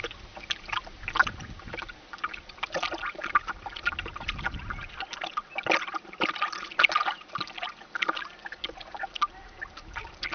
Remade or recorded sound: recorded